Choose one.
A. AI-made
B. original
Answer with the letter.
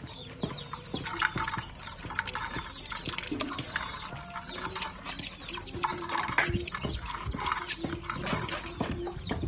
B